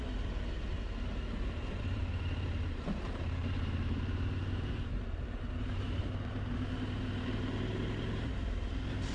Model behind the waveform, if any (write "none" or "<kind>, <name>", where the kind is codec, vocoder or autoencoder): vocoder, BigVGAN v2